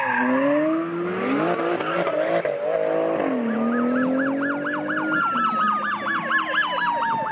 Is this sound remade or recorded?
recorded